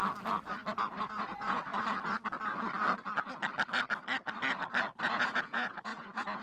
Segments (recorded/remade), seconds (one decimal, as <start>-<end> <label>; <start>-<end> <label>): 0.0-1.0 recorded; 1.0-1.7 remade; 1.7-5.0 recorded; 5.0-6.4 remade